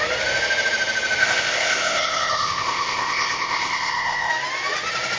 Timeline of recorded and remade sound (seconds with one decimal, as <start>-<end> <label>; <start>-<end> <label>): 0.0-1.2 recorded; 1.2-4.3 remade; 4.3-5.2 recorded